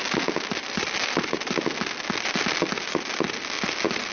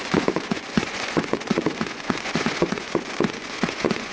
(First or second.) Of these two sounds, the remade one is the second